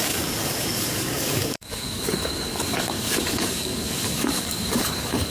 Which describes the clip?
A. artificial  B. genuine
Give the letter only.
A